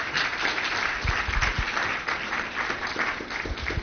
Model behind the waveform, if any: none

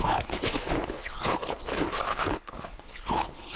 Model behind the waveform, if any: codec, HILCodec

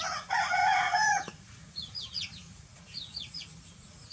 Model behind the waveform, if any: vocoder, Vocos